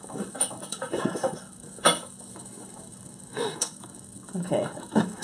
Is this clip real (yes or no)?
no